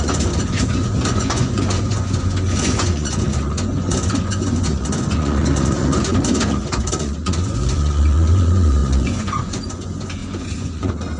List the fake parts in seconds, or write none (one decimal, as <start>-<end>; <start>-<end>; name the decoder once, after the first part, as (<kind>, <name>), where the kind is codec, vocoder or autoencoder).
0.0-11.2 (vocoder, Vocos)